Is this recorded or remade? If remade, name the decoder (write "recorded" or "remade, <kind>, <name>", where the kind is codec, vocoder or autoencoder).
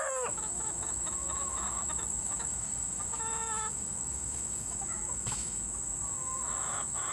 remade, autoencoder, DAC-VAE